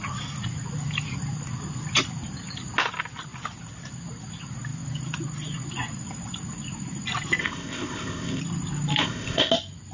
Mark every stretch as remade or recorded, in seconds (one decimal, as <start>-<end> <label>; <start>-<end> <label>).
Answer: 0.0-7.4 recorded; 7.4-8.4 remade; 8.4-9.0 recorded; 9.0-9.5 remade; 9.5-9.9 recorded